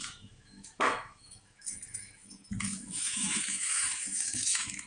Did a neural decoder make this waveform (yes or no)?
yes